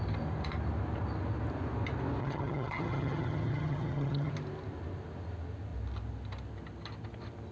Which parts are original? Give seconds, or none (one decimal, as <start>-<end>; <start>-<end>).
0.0-2.2; 4.3-7.5